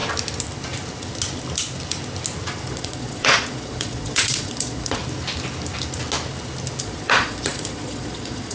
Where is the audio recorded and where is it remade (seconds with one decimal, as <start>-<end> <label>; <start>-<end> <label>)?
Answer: 0.0-2.7 recorded; 2.7-5.0 remade; 5.0-6.8 recorded; 6.8-8.5 remade

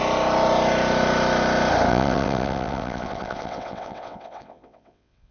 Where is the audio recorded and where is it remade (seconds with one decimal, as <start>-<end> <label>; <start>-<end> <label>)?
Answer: 0.0-1.9 recorded; 1.9-5.3 remade

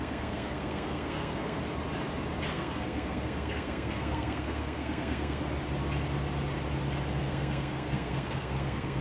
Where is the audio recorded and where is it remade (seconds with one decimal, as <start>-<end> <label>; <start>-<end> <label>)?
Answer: 0.0-1.6 remade; 1.6-2.5 recorded; 2.5-5.4 remade; 5.4-7.2 recorded; 7.2-9.0 remade

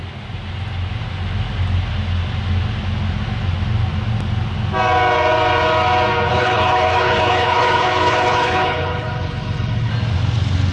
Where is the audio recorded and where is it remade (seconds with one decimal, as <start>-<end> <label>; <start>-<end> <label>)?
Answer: 0.0-6.3 recorded; 6.3-9.9 remade; 9.9-10.7 recorded

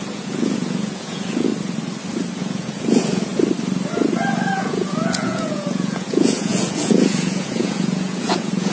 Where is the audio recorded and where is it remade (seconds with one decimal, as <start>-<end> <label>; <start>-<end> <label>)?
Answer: 0.0-1.5 remade; 1.5-2.4 recorded; 2.4-3.3 remade; 3.3-4.5 recorded; 4.5-8.7 remade